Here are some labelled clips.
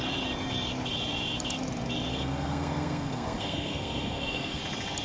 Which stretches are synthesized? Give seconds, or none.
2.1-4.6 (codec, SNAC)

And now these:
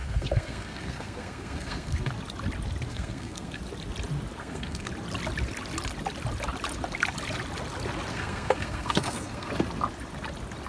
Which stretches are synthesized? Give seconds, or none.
0.0-2.1 (codec, SNAC); 2.9-3.6; 4.4-4.9; 8.1-9.5

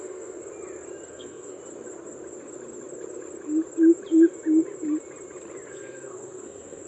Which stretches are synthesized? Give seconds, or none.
0.0-0.4 (codec, SNAC); 1.1-1.6; 5.7-6.9

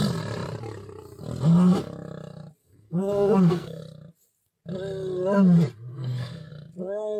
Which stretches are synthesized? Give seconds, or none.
2.6-3.8 (codec, SNAC); 5.9-6.5

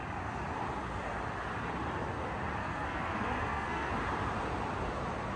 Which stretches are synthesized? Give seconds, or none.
2.6-3.9 (codec, SNAC)

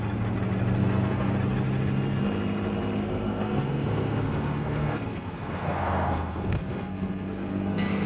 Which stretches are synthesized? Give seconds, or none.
0.8-1.3 (codec, SNAC); 3.0-8.1